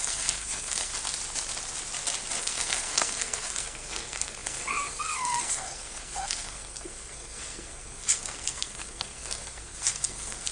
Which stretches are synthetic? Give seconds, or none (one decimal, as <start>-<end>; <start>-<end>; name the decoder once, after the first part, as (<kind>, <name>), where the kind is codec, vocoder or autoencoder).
0.0-0.9 (codec, SNAC); 2.4-10.5